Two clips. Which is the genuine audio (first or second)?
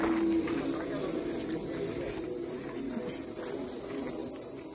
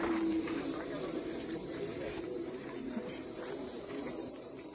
first